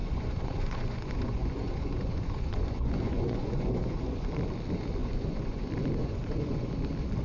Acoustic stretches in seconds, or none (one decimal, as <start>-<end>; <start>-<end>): 4.3-5.0; 5.6-6.0; 6.7-7.2